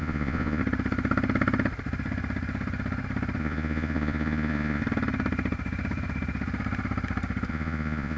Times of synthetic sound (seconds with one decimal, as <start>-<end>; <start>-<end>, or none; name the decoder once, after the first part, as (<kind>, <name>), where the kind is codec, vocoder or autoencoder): 0.0-0.6 (vocoder, Vocos); 3.4-4.8; 7.5-8.2